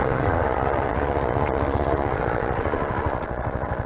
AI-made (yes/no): yes